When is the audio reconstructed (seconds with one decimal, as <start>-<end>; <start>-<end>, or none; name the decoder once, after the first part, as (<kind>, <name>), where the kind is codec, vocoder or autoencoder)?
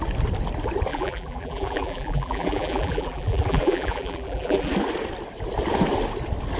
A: 0.9-4.7 (vocoder, BigVGAN v2)